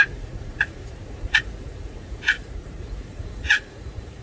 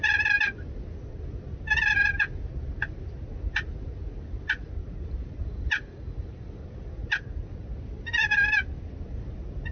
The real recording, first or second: second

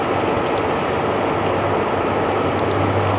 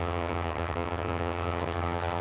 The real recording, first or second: first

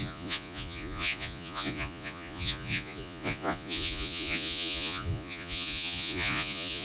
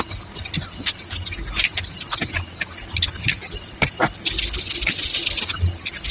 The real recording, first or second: second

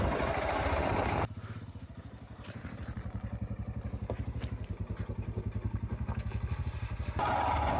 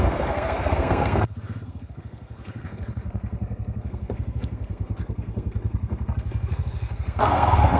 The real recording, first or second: first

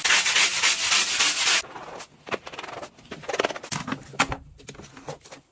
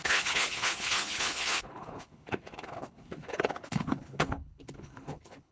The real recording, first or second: first